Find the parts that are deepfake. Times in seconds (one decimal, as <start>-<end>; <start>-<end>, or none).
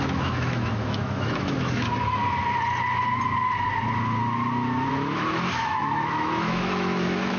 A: 0.0-2.2; 4.9-7.4